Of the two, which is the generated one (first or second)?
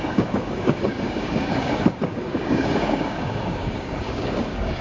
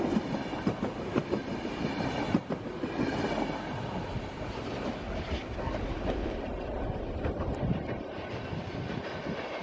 first